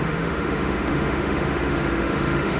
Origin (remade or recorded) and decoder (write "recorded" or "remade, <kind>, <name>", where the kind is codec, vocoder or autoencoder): remade, autoencoder, DAC-VAE